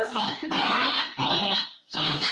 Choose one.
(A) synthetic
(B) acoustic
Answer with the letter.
A